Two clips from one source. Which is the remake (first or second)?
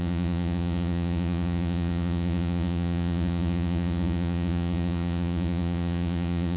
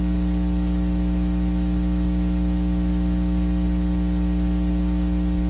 first